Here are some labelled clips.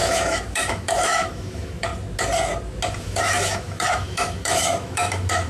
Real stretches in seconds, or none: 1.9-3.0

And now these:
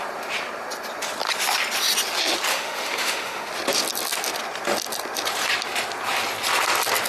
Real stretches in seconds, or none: 0.0-2.5; 3.5-7.1

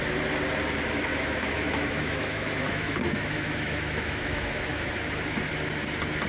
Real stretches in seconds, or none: 0.0-1.1; 4.9-6.3

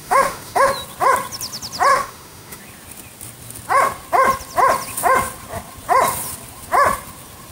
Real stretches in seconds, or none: 0.7-1.9; 2.6-7.5

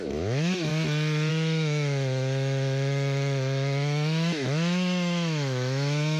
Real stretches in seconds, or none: 0.7-1.3

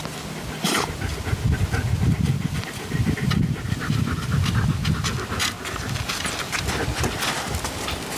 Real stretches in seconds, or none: 0.0-8.2

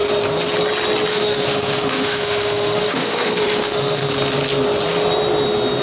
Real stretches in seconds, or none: 0.0-1.1; 4.1-5.8

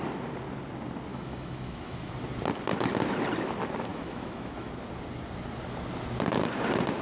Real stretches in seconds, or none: 0.0-1.1; 2.1-3.9; 4.7-7.0